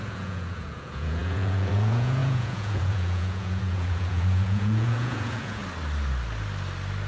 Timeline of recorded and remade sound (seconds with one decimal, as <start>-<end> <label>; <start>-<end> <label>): 0.0-5.6 remade; 5.6-7.1 recorded